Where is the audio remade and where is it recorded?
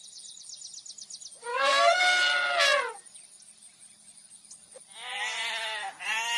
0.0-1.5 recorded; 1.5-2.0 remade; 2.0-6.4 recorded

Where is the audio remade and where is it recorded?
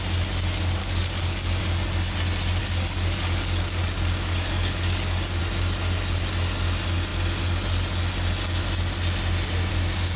0.0-0.8 recorded; 0.8-1.6 remade; 1.6-2.6 recorded; 2.6-5.4 remade; 5.4-10.2 recorded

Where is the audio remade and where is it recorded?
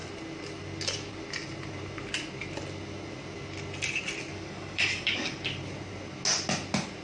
0.0-4.3 recorded; 4.3-5.3 remade; 5.3-7.0 recorded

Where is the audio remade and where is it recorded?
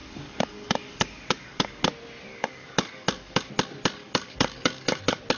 0.0-1.8 remade; 1.8-2.3 recorded; 2.3-3.5 remade; 3.5-4.0 recorded; 4.0-5.0 remade; 5.0-5.4 recorded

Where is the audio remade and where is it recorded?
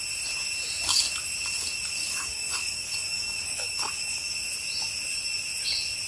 0.0-2.0 recorded; 2.0-4.3 remade; 4.3-6.1 recorded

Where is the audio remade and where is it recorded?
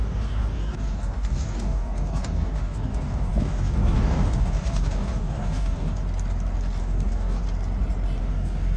0.0-6.0 remade; 6.0-6.8 recorded; 6.8-7.4 remade; 7.4-8.2 recorded; 8.2-8.8 remade